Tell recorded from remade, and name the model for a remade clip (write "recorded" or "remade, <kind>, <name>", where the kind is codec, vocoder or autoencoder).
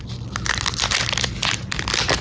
recorded